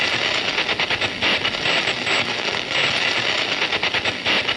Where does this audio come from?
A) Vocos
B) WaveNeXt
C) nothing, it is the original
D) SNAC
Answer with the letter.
C